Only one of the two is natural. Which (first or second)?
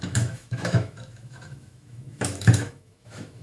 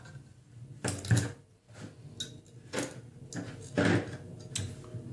second